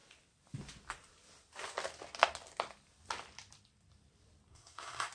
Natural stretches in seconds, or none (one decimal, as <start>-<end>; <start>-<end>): 0.0-4.5